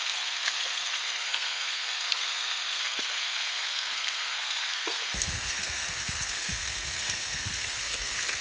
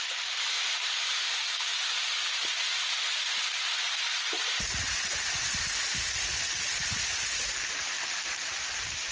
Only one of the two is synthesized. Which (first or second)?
first